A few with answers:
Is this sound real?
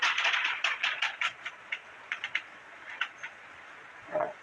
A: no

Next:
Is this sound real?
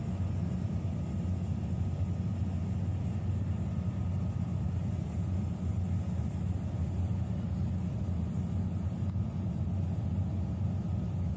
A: yes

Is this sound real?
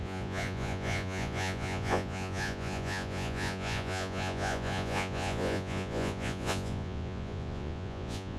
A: no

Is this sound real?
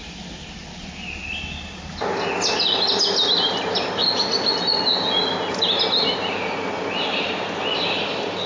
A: yes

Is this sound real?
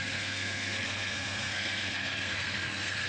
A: no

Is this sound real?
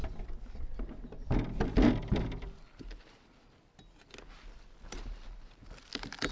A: yes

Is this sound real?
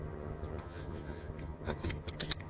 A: no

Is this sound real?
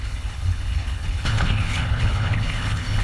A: no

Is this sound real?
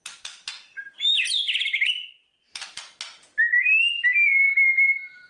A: yes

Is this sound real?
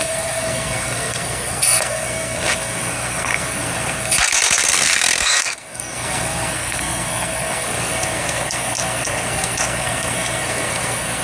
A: no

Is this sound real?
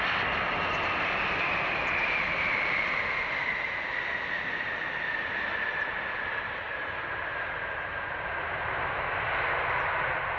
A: yes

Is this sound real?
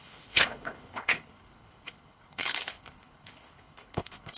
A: no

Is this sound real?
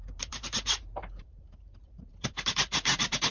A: no